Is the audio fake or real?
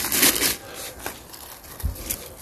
real